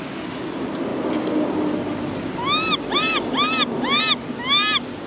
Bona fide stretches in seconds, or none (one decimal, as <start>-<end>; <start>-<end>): 0.0-5.1